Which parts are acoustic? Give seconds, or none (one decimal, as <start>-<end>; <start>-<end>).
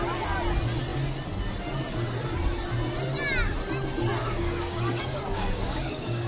0.0-4.2